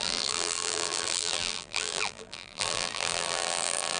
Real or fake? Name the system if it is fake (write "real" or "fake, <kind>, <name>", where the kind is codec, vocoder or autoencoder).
fake, vocoder, BigVGAN v2